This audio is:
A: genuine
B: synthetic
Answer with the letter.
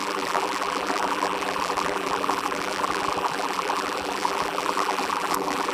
B